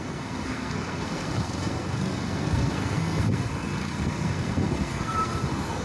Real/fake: fake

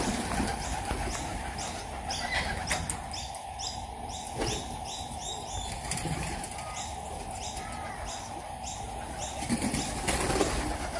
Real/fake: real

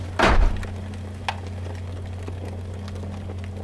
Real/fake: real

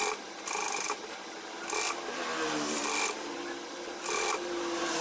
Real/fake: real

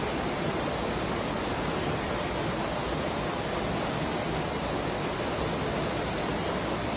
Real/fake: real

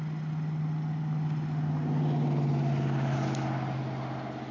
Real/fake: real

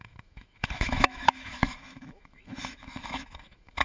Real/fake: fake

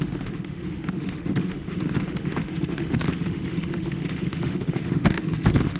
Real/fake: fake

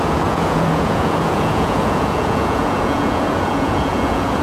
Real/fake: fake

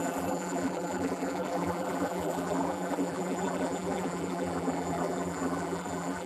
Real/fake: fake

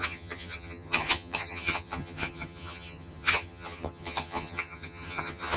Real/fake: fake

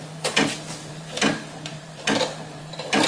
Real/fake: real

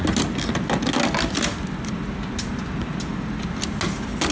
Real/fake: real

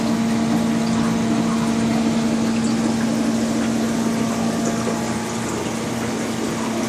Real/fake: real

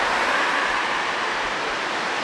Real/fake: real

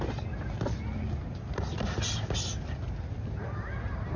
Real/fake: real